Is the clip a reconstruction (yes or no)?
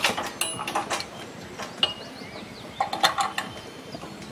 no